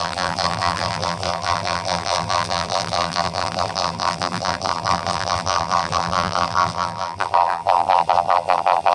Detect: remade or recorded remade